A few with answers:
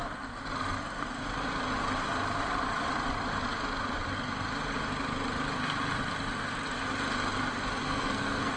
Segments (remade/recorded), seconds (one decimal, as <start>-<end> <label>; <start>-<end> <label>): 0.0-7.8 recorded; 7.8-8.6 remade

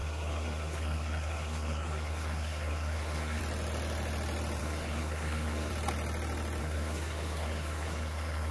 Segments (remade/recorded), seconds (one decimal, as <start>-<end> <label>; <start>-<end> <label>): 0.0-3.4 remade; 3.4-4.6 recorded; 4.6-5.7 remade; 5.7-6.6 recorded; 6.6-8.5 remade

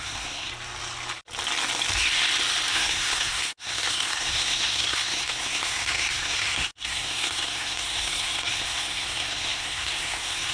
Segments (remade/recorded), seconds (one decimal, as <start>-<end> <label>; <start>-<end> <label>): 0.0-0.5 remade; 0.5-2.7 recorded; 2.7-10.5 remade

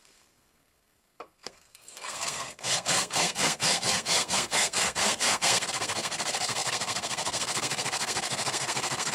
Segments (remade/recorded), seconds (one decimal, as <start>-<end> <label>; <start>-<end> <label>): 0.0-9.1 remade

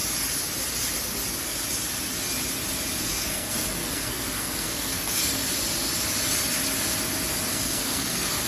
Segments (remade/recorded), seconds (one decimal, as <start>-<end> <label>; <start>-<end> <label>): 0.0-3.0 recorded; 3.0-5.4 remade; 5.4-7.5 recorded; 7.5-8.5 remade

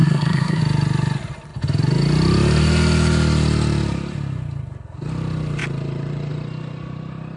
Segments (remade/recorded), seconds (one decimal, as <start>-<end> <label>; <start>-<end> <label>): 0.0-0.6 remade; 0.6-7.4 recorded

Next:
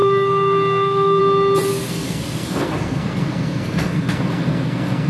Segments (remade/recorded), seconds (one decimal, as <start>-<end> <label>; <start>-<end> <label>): 0.0-1.2 remade; 1.2-1.7 recorded; 1.7-5.1 remade

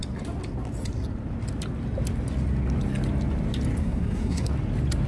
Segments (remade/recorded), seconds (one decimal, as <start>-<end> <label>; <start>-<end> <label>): 0.0-3.8 recorded; 3.8-4.5 remade; 4.5-5.1 recorded